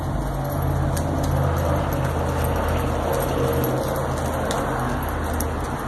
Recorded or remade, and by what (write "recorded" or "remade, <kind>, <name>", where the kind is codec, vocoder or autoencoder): recorded